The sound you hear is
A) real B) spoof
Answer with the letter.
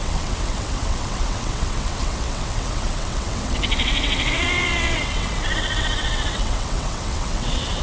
B